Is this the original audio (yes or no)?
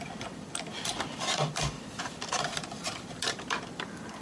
no